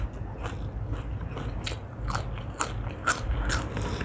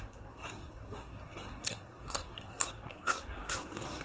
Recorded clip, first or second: first